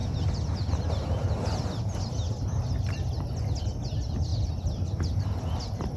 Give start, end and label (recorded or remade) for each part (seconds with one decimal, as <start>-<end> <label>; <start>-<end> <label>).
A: 0.0-6.0 recorded